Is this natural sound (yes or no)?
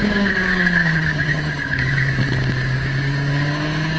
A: no